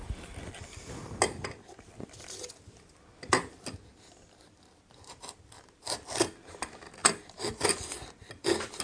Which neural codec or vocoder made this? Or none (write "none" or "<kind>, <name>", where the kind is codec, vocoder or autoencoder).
none